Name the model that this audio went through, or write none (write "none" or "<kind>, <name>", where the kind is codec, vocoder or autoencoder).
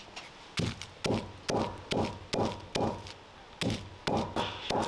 none